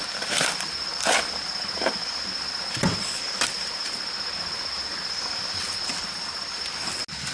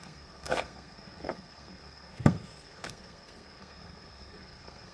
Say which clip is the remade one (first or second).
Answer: second